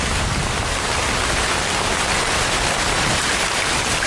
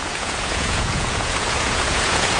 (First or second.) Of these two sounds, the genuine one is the first